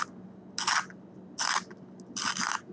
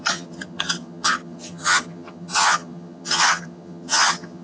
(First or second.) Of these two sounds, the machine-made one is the second